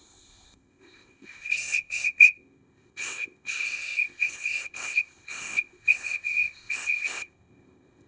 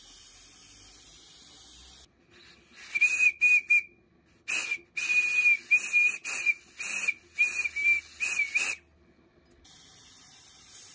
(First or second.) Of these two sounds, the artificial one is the first